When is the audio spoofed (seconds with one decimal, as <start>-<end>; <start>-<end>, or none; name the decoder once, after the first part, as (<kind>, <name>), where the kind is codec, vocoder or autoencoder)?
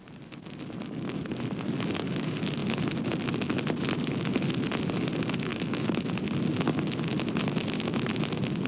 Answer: 5.5-6.1 (autoencoder, DAC-VAE)